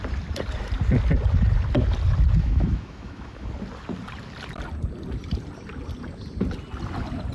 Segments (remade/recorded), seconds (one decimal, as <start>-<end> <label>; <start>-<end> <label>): 0.0-2.4 recorded; 2.4-3.5 remade; 3.5-7.3 recorded